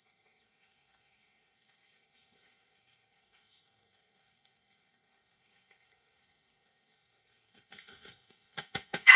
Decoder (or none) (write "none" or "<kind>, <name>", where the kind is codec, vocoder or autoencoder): codec, SNAC